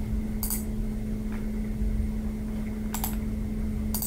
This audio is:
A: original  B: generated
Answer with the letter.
A